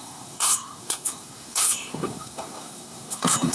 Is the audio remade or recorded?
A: remade